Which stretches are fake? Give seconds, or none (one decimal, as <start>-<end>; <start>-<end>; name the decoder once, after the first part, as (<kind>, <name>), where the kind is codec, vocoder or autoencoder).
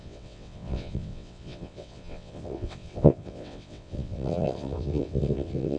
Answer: 0.0-5.8 (vocoder, WaveNeXt)